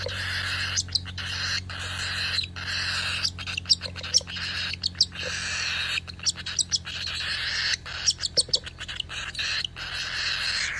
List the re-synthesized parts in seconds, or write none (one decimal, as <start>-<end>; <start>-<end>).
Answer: none